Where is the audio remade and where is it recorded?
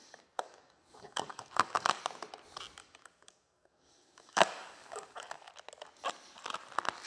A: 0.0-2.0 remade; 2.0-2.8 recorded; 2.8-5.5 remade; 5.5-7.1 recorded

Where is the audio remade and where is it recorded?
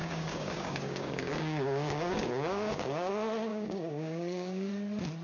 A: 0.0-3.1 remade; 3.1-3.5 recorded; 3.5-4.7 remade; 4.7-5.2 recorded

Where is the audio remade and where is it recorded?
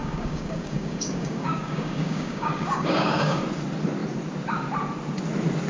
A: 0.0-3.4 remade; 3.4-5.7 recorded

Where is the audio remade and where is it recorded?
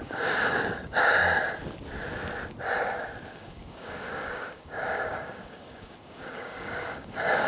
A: 0.0-1.2 remade; 1.2-3.3 recorded; 3.3-7.5 remade